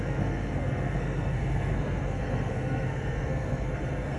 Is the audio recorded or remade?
remade